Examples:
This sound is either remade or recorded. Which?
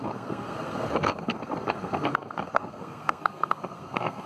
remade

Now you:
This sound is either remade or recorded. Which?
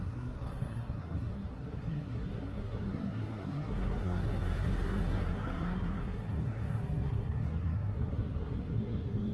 remade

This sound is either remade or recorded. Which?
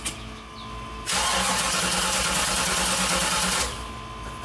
recorded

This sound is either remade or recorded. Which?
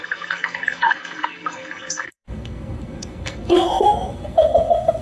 remade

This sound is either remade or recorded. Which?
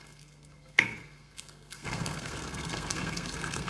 remade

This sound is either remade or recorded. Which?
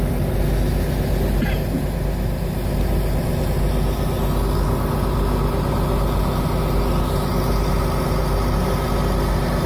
recorded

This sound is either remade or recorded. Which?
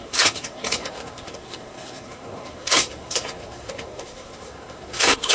remade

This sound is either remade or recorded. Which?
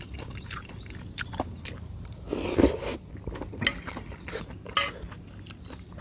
recorded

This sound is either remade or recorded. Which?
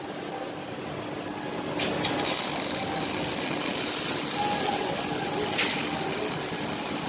recorded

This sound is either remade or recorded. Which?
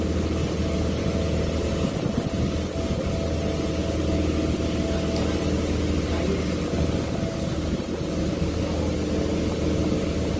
recorded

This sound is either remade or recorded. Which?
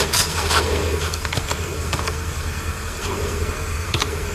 remade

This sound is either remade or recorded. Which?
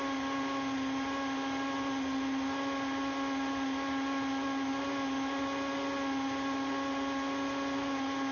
recorded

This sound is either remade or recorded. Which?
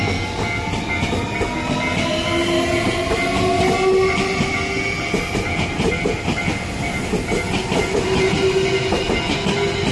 recorded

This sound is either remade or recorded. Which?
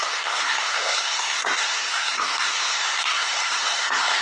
remade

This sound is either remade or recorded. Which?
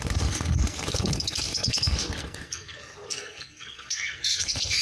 remade